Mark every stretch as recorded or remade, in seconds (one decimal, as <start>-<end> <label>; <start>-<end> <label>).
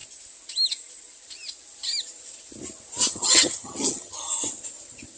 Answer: 0.0-3.1 recorded; 3.1-4.3 remade; 4.3-5.2 recorded